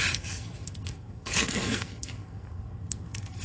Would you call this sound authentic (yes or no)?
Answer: no